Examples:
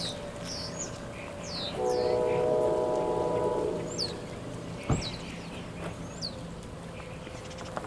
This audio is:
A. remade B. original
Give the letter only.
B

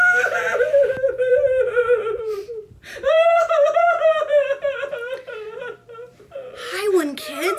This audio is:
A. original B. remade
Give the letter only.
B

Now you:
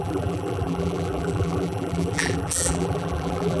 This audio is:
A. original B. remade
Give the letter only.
B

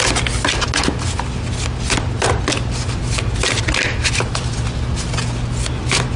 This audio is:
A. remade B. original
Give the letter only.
B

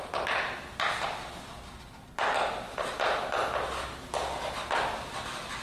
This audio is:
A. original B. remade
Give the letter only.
A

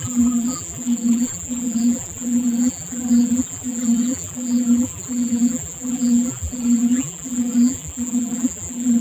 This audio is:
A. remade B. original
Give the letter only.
A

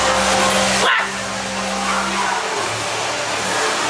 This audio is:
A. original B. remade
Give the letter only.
A